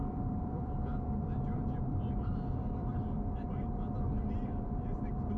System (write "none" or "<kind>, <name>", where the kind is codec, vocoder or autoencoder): vocoder, BigVGAN v2